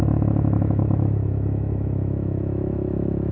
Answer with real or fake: fake